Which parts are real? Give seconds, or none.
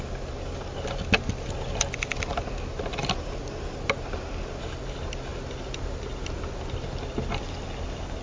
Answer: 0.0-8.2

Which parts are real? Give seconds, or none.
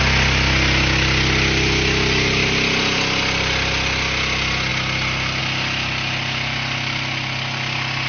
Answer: 0.0-8.1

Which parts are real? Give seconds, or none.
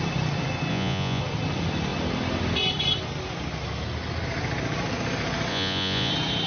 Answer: 0.0-0.7; 1.2-5.5; 6.1-6.5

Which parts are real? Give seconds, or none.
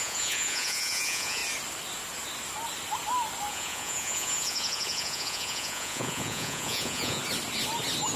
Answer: 1.4-3.5; 7.2-8.2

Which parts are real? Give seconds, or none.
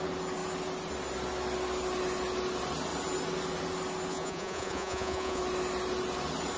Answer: 0.0-4.1; 5.4-6.6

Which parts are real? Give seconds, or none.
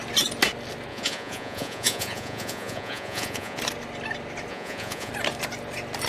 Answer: 0.0-0.9; 3.6-4.5; 5.1-6.1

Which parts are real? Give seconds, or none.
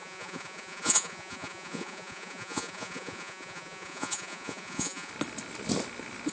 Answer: 5.1-6.3